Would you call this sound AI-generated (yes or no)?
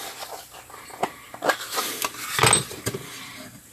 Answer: no